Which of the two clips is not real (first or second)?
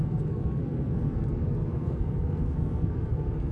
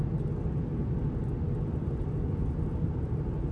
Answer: first